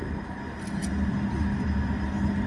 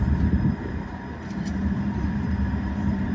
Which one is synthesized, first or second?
second